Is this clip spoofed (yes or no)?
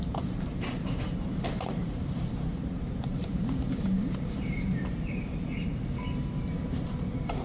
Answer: yes